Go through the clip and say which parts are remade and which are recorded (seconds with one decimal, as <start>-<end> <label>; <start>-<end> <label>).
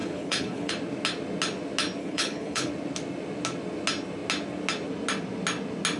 0.0-0.7 remade; 0.7-2.0 recorded; 2.0-2.7 remade; 2.7-6.0 recorded